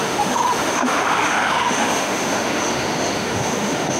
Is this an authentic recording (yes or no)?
no